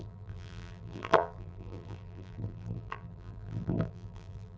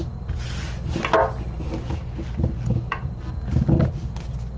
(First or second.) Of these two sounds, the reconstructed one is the first